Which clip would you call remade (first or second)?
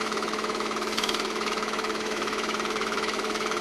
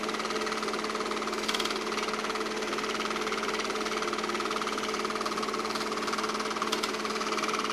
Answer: first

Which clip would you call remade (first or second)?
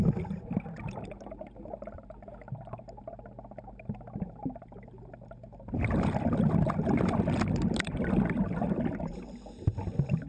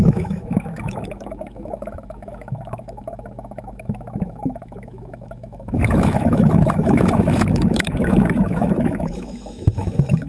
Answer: second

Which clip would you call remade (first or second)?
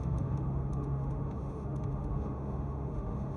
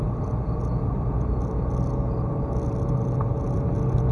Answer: first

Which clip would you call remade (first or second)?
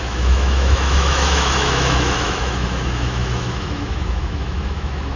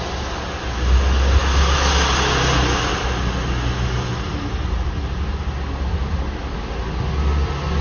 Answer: first